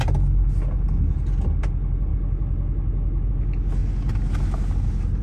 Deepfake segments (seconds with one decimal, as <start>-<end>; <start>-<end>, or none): none